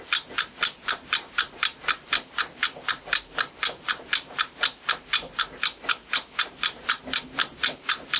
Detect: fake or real fake